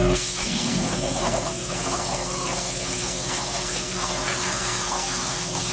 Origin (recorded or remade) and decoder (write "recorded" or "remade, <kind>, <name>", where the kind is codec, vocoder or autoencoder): remade, codec, SNAC